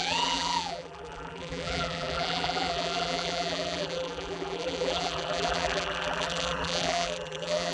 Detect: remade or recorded remade